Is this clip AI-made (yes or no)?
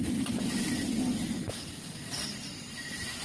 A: no